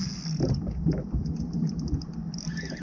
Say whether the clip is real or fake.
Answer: real